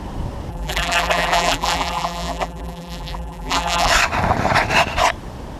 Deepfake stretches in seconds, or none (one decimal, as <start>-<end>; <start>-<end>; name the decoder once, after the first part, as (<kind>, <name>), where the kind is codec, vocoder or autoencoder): 0.5-3.9 (vocoder, BigVGAN v2)